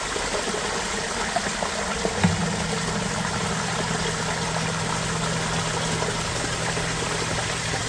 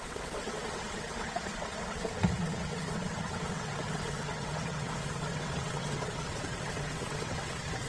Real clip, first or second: first